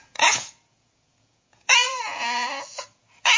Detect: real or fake fake